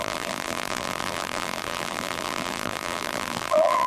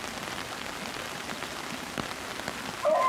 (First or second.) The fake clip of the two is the first